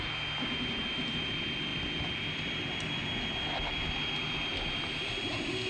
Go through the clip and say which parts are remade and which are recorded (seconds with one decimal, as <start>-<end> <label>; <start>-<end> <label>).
0.0-5.7 recorded